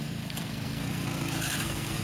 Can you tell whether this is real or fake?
fake